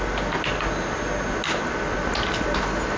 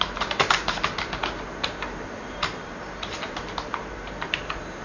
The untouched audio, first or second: first